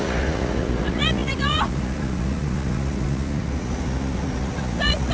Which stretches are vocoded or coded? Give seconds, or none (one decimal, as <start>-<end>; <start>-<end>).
0.0-5.1